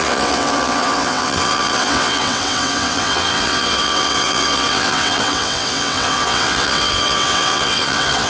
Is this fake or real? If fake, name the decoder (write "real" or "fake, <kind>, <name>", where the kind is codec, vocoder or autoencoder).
fake, vocoder, WaveNeXt